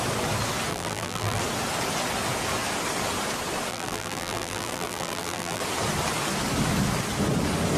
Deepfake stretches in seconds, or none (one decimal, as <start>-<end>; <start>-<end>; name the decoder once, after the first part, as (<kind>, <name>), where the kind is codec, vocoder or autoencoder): 0.7-1.4 (vocoder, BigVGAN v2); 3.7-5.6